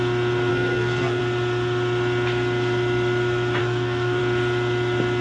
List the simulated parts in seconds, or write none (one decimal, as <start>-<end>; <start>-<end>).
0.5-1.2; 3.6-4.2